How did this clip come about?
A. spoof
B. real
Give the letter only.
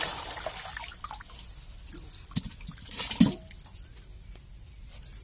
B